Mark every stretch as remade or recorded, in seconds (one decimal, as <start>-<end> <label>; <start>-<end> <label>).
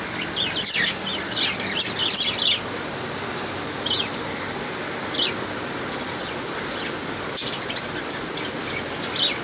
0.0-9.4 recorded